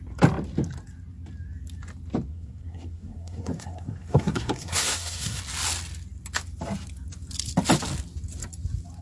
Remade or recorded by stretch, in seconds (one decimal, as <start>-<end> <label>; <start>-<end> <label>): 0.0-2.3 recorded; 2.3-5.4 remade; 5.4-9.0 recorded